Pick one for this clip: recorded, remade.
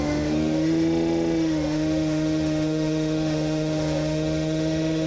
remade